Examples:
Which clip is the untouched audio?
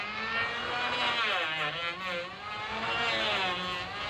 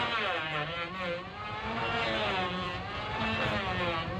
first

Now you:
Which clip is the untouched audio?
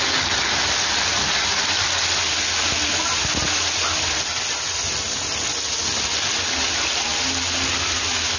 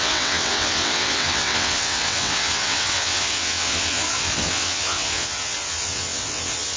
first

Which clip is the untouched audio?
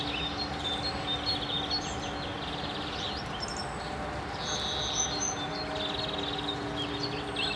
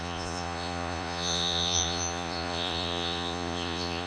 first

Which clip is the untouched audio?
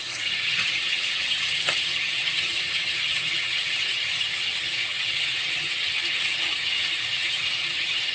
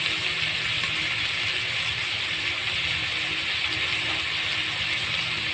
second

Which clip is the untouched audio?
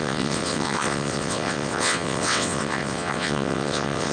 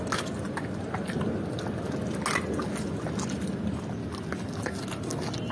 second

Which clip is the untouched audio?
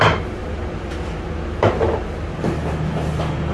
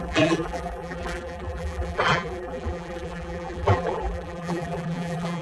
first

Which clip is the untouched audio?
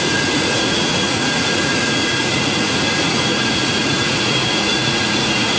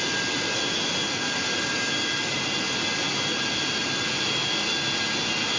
second